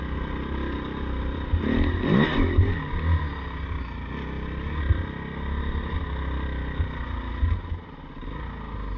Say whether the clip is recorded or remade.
recorded